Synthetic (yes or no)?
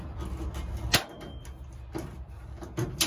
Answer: no